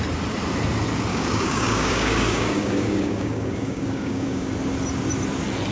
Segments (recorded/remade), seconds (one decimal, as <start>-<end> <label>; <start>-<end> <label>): 0.0-1.1 recorded; 1.1-4.5 remade; 4.5-5.7 recorded